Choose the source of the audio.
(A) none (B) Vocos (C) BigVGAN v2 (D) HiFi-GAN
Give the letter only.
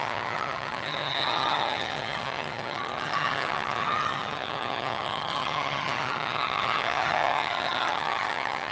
D